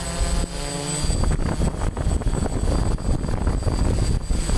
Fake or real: real